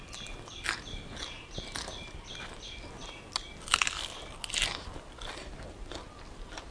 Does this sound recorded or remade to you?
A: recorded